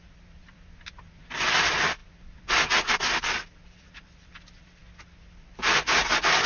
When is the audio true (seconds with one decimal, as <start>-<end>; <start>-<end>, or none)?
none